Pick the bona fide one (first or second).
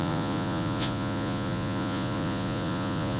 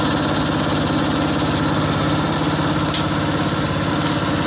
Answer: second